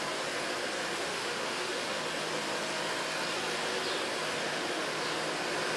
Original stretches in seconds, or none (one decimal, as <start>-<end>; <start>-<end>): 0.0-0.9; 2.0-4.3; 4.9-5.8